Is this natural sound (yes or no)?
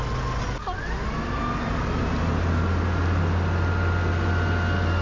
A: yes